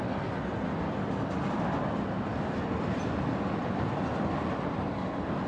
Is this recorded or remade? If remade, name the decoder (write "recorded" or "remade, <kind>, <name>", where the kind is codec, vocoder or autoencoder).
recorded